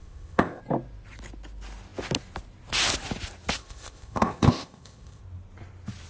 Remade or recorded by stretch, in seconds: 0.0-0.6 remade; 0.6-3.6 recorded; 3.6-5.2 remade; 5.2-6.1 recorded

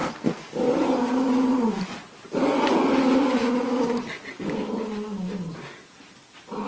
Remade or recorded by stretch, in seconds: 0.0-0.5 remade; 0.5-6.7 recorded

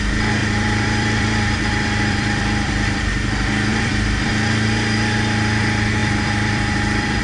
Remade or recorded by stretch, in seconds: 0.0-0.4 recorded; 0.4-3.1 remade; 3.1-3.7 recorded; 3.7-4.3 remade; 4.3-6.0 recorded; 6.0-7.2 remade

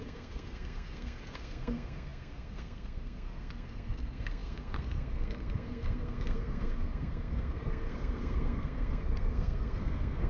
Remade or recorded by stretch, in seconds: 0.0-10.3 remade

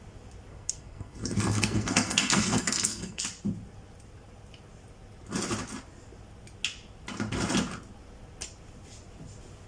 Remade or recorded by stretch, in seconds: 0.0-0.5 recorded; 0.5-3.2 remade; 3.2-9.7 recorded

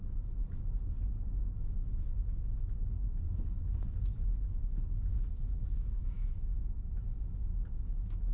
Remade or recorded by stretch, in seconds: 0.0-6.0 recorded; 6.0-6.9 remade; 6.9-8.3 recorded